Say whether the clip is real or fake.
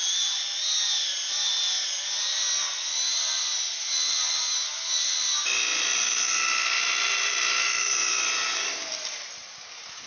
real